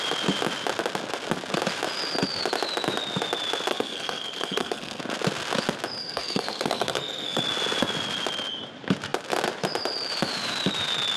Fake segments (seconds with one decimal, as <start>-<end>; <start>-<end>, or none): 3.7-5.0; 6.0-7.4